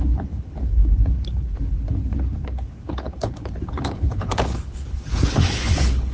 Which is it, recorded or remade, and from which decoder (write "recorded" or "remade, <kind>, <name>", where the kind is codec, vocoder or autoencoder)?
remade, codec, HILCodec